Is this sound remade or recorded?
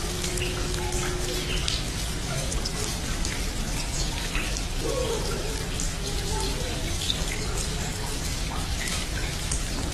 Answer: remade